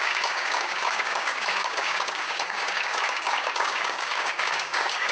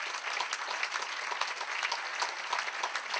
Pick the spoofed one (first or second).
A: first